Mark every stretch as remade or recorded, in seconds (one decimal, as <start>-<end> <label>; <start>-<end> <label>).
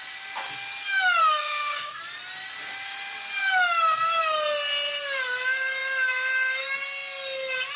0.0-1.2 recorded; 1.2-2.0 remade; 2.0-7.8 recorded